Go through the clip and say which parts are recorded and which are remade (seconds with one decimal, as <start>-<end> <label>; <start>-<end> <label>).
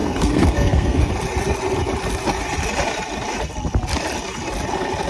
0.0-1.1 remade; 1.1-5.1 recorded